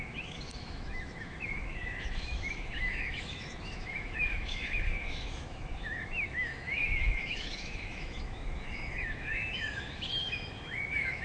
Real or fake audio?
fake